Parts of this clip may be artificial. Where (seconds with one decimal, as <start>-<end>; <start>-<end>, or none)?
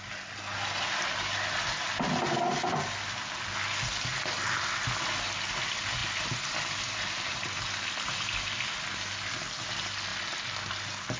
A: 6.0-7.6